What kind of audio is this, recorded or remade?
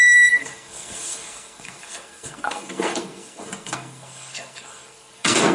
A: remade